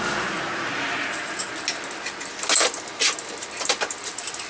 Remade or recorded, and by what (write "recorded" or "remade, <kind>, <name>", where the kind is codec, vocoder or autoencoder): recorded